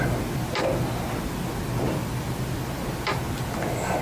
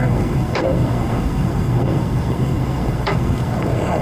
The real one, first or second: first